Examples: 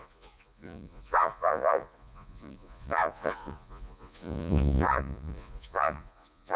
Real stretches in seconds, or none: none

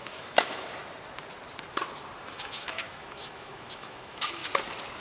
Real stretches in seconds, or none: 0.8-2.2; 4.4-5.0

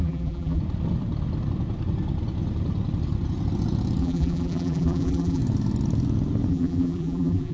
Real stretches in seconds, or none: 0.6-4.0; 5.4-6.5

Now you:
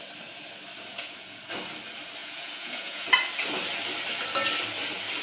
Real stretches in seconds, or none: 0.0-0.9; 1.4-2.2; 3.1-5.2